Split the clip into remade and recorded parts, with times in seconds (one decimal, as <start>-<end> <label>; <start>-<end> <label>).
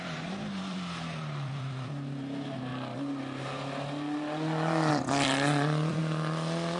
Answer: 0.0-2.7 remade; 2.7-4.9 recorded; 4.9-6.0 remade; 6.0-6.8 recorded